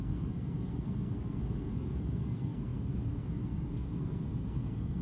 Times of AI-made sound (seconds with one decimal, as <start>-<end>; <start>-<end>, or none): 0.0-5.0